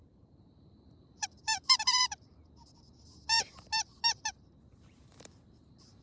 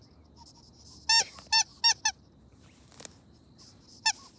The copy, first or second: first